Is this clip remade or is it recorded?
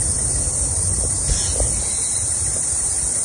recorded